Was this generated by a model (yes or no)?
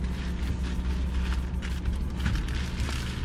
no